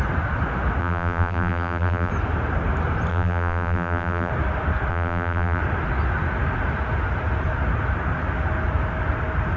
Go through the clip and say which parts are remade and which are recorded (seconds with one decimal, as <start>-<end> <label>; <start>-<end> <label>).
0.0-0.8 recorded; 0.8-2.1 remade; 2.1-3.1 recorded; 3.1-4.3 remade; 4.3-4.9 recorded; 4.9-5.6 remade; 5.6-9.6 recorded

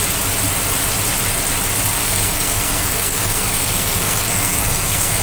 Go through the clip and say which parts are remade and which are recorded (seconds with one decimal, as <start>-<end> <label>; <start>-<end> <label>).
0.0-1.9 recorded; 1.9-5.2 remade

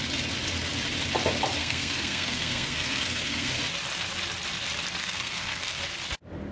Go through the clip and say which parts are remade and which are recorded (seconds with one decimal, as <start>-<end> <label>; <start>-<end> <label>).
0.0-1.6 recorded; 1.6-3.5 remade; 3.5-5.0 recorded; 5.0-5.8 remade; 5.8-6.5 recorded

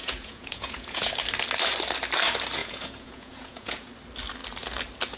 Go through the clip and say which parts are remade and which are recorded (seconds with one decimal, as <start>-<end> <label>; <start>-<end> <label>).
0.0-1.1 remade; 1.1-2.6 recorded; 2.6-3.9 remade; 3.9-5.2 recorded

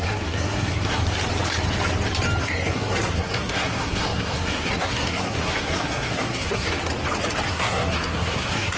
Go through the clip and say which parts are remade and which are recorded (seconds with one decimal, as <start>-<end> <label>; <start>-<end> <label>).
0.0-1.0 remade; 1.0-2.4 recorded; 2.4-6.9 remade; 6.9-7.5 recorded; 7.5-8.8 remade

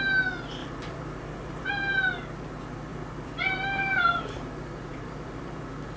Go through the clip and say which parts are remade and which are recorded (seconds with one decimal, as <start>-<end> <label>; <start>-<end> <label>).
0.0-0.6 recorded; 0.6-1.7 remade; 1.7-2.9 recorded; 2.9-4.2 remade; 4.2-4.9 recorded; 4.9-5.6 remade; 5.6-6.0 recorded

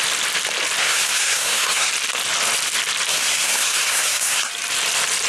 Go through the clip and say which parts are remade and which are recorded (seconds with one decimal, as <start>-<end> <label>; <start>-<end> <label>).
0.0-0.8 recorded; 0.8-1.9 remade; 1.9-3.1 recorded; 3.1-4.5 remade; 4.5-5.3 recorded

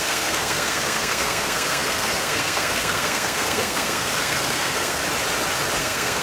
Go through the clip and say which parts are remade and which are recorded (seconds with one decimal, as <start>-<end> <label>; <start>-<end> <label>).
0.0-5.0 remade; 5.0-5.8 recorded; 5.8-6.2 remade